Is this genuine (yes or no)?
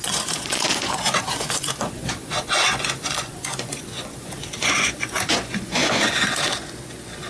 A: no